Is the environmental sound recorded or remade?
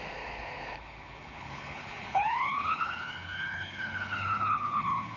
remade